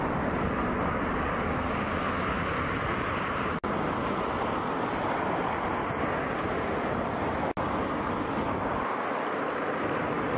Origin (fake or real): real